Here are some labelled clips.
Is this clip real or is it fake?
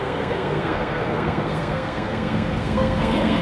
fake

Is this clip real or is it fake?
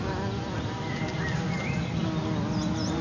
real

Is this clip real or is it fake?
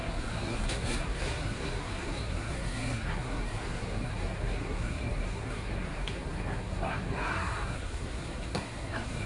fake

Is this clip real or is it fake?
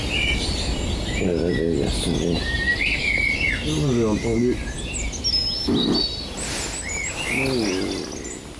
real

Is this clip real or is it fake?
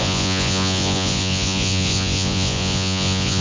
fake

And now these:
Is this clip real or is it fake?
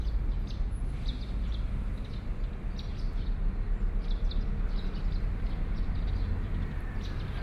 real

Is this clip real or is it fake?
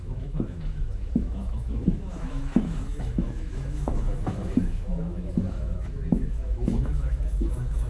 fake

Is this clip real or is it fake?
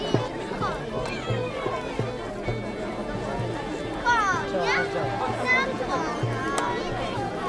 real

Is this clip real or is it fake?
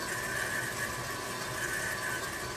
real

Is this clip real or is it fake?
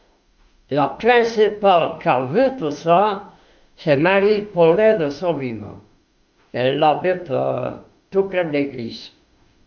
fake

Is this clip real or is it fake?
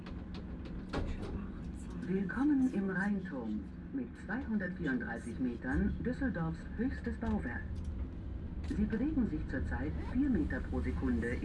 real